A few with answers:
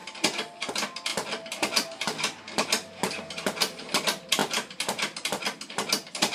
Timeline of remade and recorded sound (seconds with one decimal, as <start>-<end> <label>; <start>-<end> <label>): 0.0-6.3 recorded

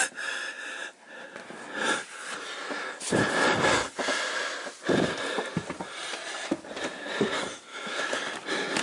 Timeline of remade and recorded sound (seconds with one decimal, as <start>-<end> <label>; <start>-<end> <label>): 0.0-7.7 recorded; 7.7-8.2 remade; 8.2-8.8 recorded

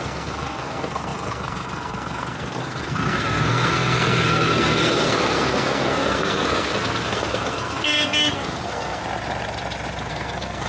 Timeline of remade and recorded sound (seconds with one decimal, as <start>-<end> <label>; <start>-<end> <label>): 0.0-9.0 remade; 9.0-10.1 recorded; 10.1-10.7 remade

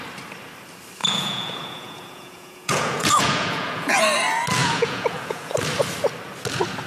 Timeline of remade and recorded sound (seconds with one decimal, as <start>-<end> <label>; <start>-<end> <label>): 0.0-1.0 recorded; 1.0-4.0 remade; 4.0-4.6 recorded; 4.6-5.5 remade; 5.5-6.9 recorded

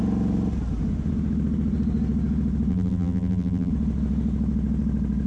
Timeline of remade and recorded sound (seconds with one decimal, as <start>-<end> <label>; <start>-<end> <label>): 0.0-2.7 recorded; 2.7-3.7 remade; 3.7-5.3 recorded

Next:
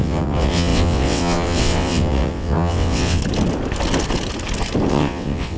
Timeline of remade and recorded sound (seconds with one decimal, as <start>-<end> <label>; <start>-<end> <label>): 0.0-3.2 remade; 3.2-4.9 recorded; 4.9-5.6 remade